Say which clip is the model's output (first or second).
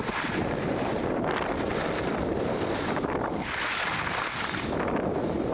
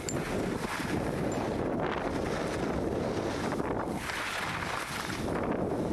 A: first